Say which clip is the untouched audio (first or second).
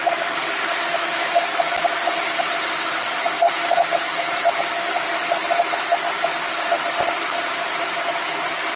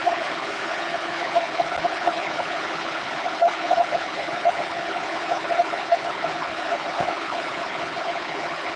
first